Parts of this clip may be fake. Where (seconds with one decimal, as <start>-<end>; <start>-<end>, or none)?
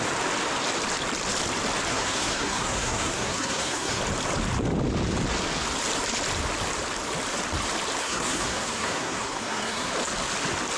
1.9-4.0; 8.0-9.9